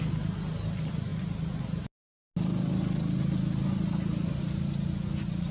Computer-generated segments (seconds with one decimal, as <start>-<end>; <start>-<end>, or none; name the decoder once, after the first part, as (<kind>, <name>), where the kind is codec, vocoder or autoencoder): none